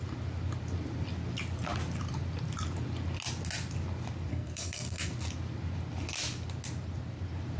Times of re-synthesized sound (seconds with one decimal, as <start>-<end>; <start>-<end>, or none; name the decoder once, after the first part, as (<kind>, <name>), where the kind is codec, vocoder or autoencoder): 4.3-5.1 (codec, SNAC)